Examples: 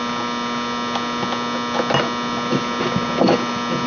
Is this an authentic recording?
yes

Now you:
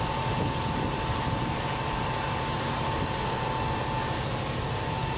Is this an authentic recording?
yes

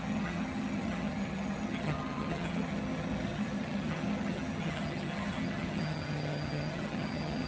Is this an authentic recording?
no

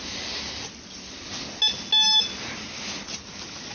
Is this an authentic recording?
yes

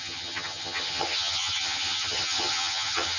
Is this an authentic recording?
no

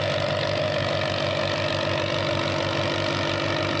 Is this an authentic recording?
yes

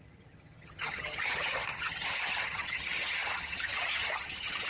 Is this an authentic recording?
no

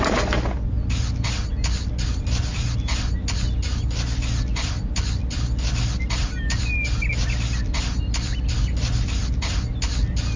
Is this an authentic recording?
yes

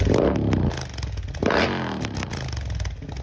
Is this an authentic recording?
yes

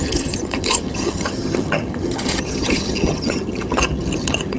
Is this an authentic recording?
no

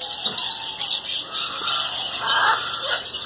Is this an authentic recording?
yes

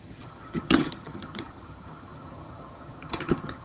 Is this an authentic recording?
no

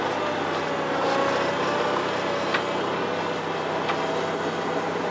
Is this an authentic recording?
yes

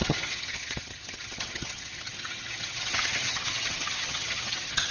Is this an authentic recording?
no